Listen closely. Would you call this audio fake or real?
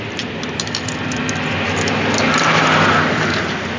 real